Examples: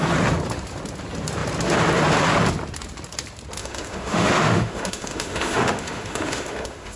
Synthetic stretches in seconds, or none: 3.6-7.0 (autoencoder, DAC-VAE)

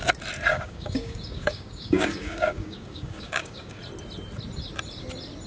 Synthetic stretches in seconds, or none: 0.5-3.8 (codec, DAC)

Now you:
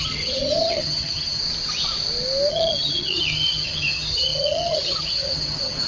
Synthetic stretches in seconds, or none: 0.0-1.4 (vocoder, HiFi-GAN); 2.5-5.9

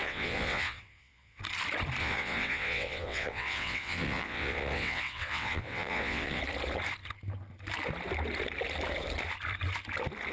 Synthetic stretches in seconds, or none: 0.0-1.4 (vocoder, WaveNeXt); 2.0-6.4

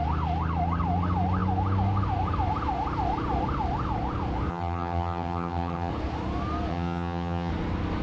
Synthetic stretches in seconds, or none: 4.5-5.9 (vocoder, HiFi-GAN); 6.7-7.5

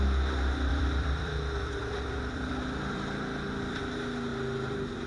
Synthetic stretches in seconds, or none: 0.7-3.8 (vocoder, BigVGAN v2)

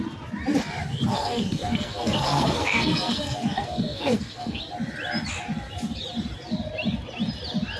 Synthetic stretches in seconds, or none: 1.1-4.6 (codec, SNAC)